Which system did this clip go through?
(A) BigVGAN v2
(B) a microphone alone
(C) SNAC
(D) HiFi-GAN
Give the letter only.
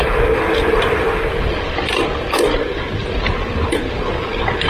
B